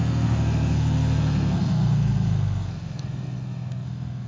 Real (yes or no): no